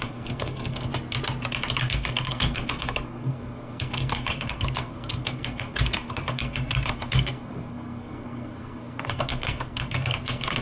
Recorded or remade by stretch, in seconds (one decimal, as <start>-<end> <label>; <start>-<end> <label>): 0.0-0.9 remade; 0.9-1.9 recorded; 1.9-10.6 remade